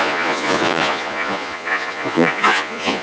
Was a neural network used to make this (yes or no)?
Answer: yes